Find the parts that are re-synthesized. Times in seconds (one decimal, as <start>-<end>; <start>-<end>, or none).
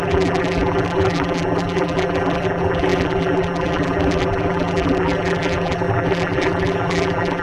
0.0-7.4